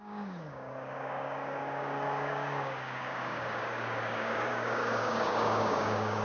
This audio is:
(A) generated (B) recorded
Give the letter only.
A